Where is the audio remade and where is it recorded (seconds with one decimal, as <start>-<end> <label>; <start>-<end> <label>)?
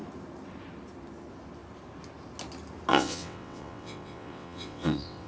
0.0-2.9 recorded; 2.9-5.3 remade